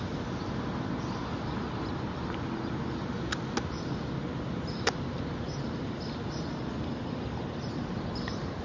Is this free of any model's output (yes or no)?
yes